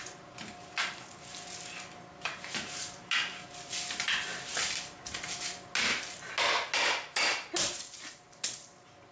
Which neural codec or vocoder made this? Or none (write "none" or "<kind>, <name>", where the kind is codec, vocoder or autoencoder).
none